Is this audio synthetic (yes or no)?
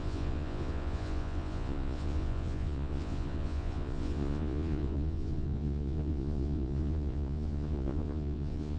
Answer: yes